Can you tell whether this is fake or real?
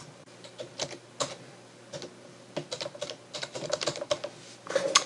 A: real